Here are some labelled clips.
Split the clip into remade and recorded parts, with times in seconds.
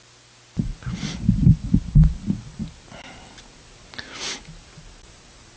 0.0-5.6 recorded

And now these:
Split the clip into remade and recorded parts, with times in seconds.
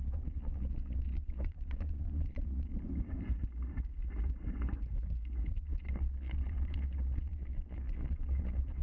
0.0-2.7 remade; 2.7-5.5 recorded; 5.5-8.8 remade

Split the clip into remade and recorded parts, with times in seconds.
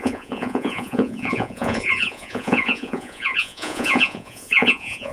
0.0-5.1 remade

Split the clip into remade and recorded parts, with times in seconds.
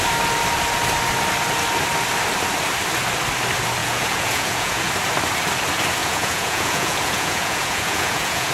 0.0-3.8 recorded; 3.8-4.9 remade; 4.9-6.0 recorded; 6.0-8.5 remade